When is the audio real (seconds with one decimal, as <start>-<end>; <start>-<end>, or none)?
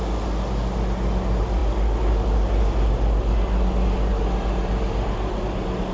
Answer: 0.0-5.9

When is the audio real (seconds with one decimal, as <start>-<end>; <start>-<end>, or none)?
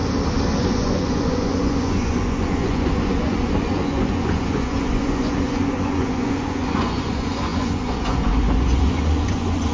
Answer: 0.0-0.6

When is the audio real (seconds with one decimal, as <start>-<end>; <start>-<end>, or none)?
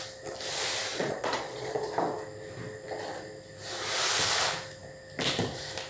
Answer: 0.0-0.9; 1.9-5.9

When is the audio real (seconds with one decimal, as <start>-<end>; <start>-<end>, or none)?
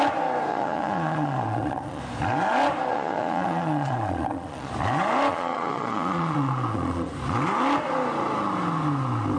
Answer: 0.0-0.5; 2.0-2.9; 4.7-5.3; 7.1-9.4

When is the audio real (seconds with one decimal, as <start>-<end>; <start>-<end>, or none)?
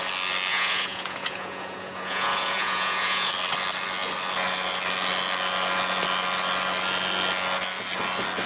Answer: 0.0-0.5; 3.3-8.5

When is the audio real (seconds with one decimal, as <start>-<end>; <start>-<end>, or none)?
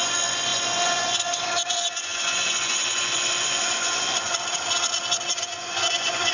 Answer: 4.3-5.3